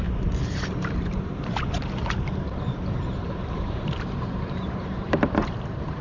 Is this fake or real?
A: fake